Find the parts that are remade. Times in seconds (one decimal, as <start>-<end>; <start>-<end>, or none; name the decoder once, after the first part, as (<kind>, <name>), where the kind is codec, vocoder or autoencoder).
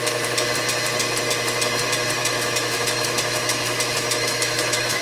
2.2-5.0 (autoencoder, DAC-VAE)